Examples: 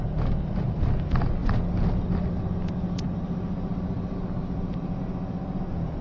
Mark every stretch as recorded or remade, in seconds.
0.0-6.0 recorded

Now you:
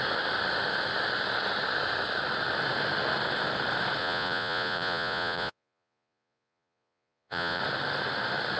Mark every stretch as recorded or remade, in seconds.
0.0-4.0 recorded; 4.0-7.6 remade; 7.6-8.6 recorded

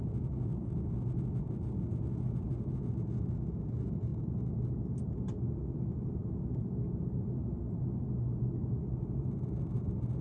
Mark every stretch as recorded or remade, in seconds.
0.0-10.2 recorded